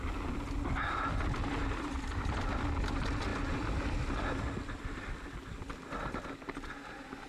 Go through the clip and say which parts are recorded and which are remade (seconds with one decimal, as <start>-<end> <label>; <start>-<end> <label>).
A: 0.0-7.3 recorded